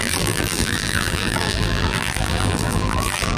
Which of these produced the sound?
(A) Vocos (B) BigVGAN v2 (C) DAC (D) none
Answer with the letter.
B